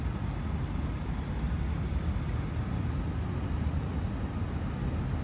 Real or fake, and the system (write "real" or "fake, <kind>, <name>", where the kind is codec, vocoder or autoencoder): real